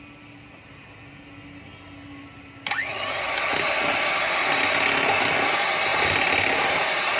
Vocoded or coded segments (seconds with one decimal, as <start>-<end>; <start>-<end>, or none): none